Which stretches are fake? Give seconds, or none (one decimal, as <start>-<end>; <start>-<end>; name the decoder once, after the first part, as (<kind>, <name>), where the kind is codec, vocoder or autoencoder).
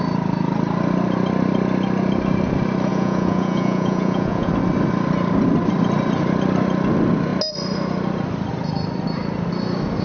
2.9-4.5 (vocoder, Vocos)